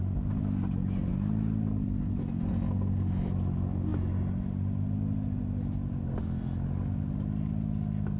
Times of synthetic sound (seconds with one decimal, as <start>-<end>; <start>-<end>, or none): none